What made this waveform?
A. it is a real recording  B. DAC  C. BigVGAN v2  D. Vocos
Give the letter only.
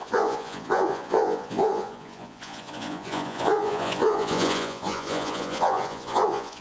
D